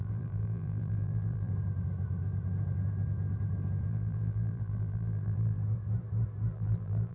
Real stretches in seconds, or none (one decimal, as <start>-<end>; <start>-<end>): 1.5-3.9; 5.6-6.5